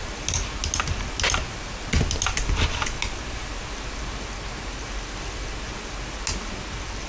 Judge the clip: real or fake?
real